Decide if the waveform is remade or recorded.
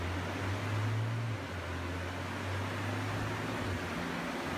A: recorded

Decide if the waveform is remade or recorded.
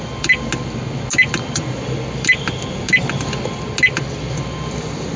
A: recorded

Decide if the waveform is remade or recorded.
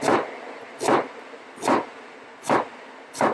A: recorded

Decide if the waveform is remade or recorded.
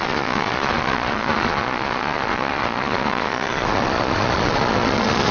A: remade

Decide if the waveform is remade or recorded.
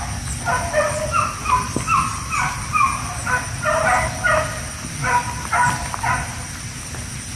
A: recorded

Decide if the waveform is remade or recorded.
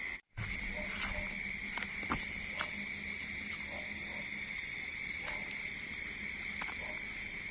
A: recorded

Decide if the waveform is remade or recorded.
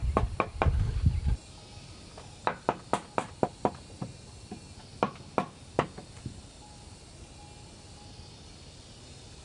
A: recorded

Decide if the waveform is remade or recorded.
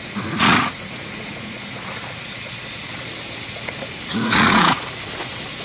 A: remade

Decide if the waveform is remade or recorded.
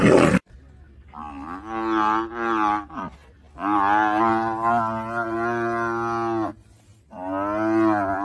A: recorded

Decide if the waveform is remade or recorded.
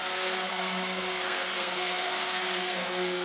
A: remade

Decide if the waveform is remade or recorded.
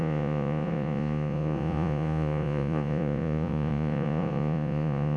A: remade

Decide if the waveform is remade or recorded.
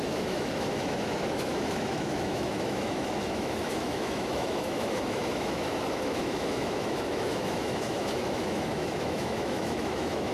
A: remade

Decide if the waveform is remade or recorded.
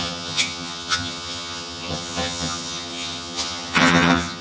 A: remade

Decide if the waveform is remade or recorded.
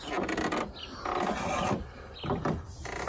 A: recorded